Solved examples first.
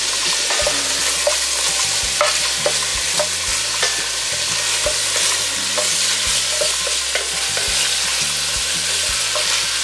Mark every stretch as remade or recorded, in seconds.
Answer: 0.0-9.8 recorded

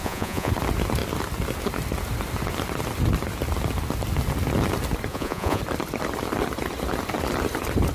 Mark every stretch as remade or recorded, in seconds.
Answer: 0.0-0.5 remade; 0.5-5.1 recorded; 5.1-5.6 remade; 5.6-7.9 recorded

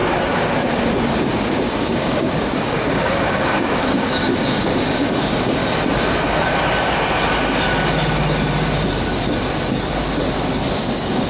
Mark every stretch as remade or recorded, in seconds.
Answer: 0.0-1.2 recorded; 1.2-5.6 remade; 5.6-10.7 recorded; 10.7-11.3 remade

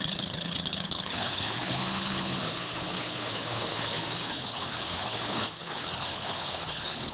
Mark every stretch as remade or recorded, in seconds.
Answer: 0.0-7.1 remade

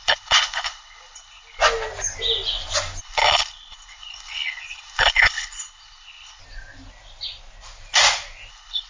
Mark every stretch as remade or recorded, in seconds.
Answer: 0.0-1.6 remade; 1.6-3.0 recorded; 3.0-6.4 remade; 6.4-8.5 recorded; 8.5-8.9 remade

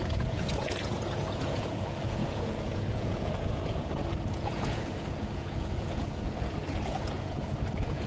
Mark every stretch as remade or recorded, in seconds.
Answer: 0.0-8.1 remade